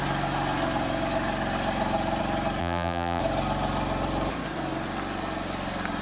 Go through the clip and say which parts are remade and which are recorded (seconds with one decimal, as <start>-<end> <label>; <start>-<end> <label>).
0.0-2.6 recorded; 2.6-3.2 remade; 3.2-6.0 recorded

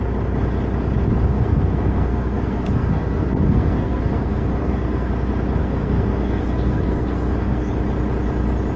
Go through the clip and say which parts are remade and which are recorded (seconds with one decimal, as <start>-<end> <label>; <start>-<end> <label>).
0.0-1.3 recorded; 1.3-5.1 remade; 5.1-5.6 recorded; 5.6-7.7 remade; 7.7-8.8 recorded

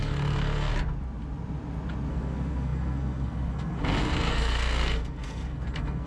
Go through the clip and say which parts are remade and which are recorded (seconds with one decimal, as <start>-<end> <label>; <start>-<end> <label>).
0.0-0.7 remade; 0.7-2.1 recorded; 2.1-6.1 remade

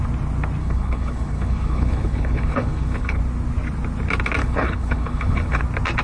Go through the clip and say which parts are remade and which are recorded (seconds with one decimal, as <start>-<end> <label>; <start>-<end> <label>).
0.0-0.6 recorded; 0.6-3.2 remade; 3.2-4.4 recorded; 4.4-5.6 remade; 5.6-6.0 recorded

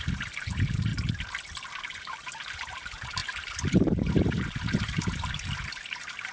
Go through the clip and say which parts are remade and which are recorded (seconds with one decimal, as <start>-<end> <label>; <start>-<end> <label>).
0.0-0.9 remade; 0.9-2.0 recorded; 2.0-6.3 remade

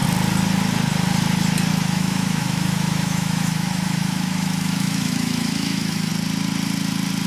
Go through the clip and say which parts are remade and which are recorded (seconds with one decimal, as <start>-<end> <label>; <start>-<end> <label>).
0.0-1.7 recorded; 1.7-6.1 remade; 6.1-7.3 recorded

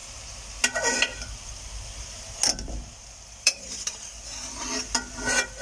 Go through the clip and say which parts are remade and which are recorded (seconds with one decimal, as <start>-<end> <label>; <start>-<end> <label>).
0.0-3.4 recorded; 3.4-4.1 remade; 4.1-5.6 recorded